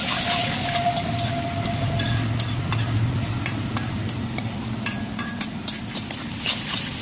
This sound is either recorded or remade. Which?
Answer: recorded